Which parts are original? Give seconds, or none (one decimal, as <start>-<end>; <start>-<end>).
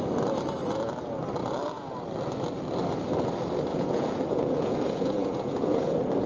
0.0-3.7; 5.8-6.3